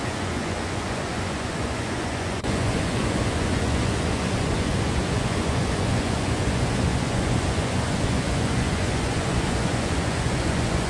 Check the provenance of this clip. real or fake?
fake